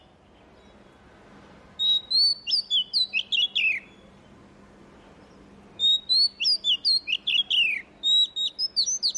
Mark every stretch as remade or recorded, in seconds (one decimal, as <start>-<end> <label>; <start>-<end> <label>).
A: 0.0-9.2 recorded